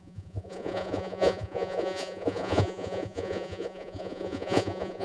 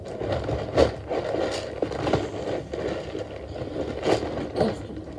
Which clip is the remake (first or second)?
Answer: first